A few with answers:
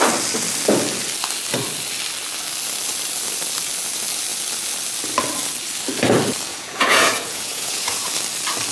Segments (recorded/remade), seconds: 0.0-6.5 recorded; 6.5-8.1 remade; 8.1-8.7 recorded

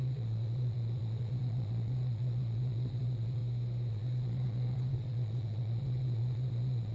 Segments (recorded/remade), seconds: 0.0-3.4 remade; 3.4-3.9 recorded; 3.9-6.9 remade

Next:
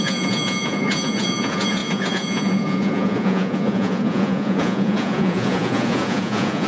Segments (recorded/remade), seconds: 0.0-6.7 remade

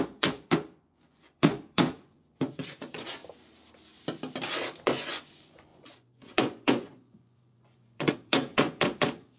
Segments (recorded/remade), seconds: 0.0-3.2 remade; 3.2-4.8 recorded; 4.8-9.4 remade

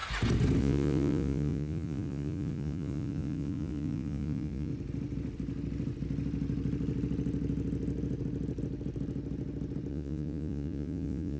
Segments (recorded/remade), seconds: 0.0-0.6 recorded; 0.6-4.7 remade; 4.7-9.9 recorded; 9.9-11.4 remade

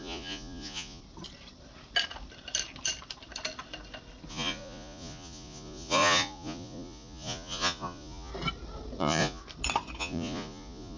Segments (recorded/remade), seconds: 0.0-1.0 remade; 1.0-4.3 recorded; 4.3-8.3 remade; 8.3-9.0 recorded; 9.0-9.4 remade; 9.4-10.0 recorded; 10.0-11.0 remade